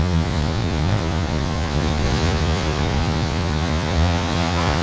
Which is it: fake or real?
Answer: fake